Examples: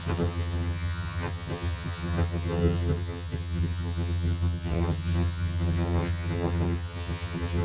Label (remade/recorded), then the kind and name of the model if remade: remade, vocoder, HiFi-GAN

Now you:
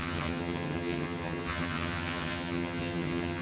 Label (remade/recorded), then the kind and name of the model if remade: remade, vocoder, HiFi-GAN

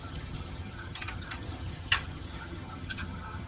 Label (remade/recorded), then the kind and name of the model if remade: remade, vocoder, HiFi-GAN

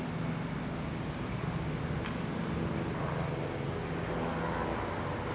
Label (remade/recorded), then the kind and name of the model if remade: recorded